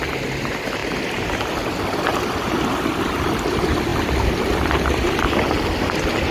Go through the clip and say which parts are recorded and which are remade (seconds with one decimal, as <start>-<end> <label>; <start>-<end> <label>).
0.0-6.3 recorded